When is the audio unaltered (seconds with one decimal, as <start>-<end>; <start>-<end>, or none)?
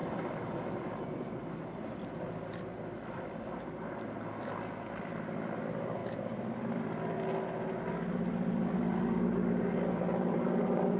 0.0-6.0; 6.8-11.0